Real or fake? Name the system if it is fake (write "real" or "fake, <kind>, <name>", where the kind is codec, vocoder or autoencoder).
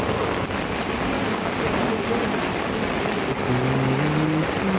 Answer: real